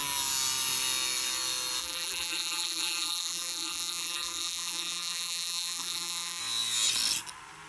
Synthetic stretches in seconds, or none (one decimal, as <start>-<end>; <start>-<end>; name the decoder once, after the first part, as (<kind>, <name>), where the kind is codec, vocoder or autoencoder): 1.8-6.4 (vocoder, BigVGAN v2)

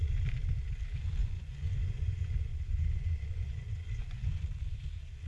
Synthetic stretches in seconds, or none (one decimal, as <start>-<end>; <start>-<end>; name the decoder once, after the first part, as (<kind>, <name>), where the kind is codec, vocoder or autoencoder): 1.2-4.4 (vocoder, Vocos)

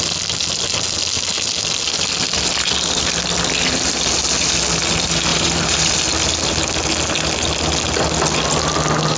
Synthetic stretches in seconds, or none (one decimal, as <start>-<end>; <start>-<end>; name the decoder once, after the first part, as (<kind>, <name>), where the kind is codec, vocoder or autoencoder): 5.3-6.0 (vocoder, BigVGAN v2)

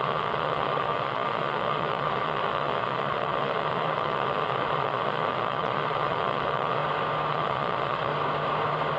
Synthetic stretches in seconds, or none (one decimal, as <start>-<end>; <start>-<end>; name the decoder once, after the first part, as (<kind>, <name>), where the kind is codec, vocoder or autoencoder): 0.0-6.8 (vocoder, Vocos); 7.3-8.1

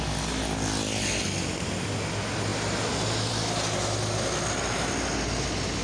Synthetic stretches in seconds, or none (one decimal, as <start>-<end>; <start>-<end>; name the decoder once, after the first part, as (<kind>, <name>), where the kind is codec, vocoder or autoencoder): none